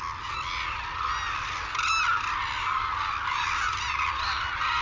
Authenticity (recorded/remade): recorded